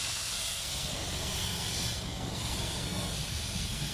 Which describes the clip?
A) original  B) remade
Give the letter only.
B